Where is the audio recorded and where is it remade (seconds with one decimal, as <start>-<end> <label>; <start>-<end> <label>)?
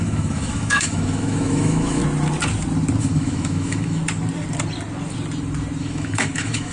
0.0-2.0 remade; 2.0-3.0 recorded; 3.0-4.0 remade; 4.0-5.8 recorded; 5.8-6.7 remade